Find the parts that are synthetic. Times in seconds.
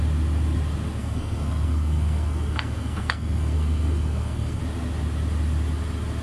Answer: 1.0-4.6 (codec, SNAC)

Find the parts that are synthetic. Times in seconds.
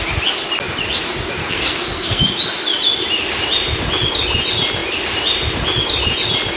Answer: 1.4-2.2 (codec, SNAC)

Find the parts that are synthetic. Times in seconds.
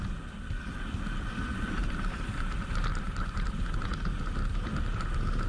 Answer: 1.8-2.3 (vocoder, BigVGAN v2); 2.9-3.5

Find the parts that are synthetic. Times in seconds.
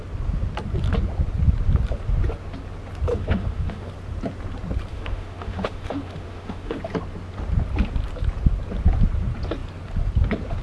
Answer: 3.1-3.9 (autoencoder, DAC-VAE); 4.9-6.8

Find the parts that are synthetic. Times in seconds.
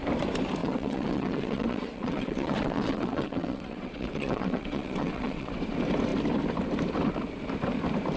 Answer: 0.6-5.5 (vocoder, WaveNeXt)